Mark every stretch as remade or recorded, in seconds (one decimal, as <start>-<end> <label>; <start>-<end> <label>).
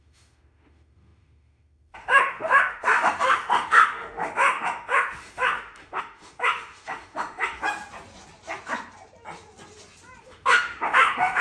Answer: 0.0-7.6 remade; 7.6-10.2 recorded; 10.2-11.4 remade